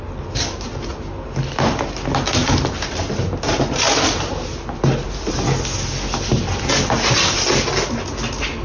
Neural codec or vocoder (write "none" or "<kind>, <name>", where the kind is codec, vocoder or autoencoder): none